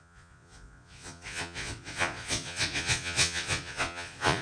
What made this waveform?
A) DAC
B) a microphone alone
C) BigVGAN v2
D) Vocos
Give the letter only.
D